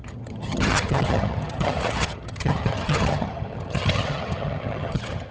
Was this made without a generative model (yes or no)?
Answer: no